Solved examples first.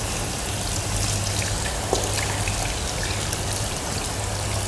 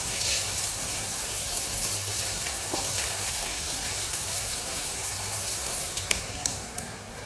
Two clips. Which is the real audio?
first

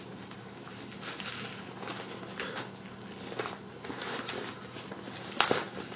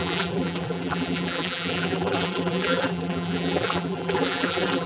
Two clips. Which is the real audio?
first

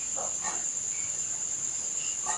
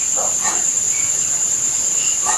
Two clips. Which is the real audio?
first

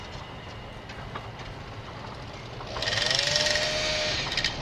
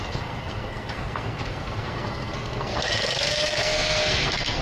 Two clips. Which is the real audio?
first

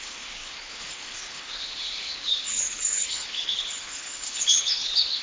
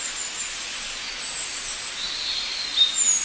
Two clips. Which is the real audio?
second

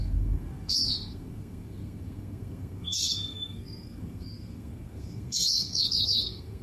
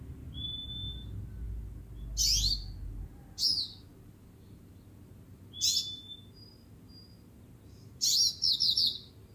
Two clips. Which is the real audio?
second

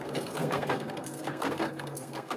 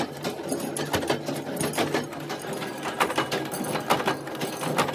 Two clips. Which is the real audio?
second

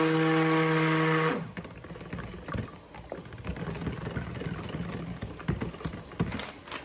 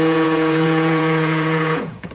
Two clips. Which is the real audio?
first